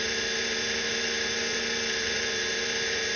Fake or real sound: fake